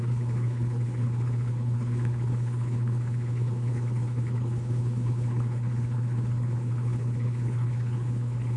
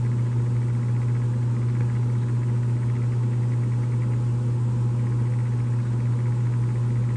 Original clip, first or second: second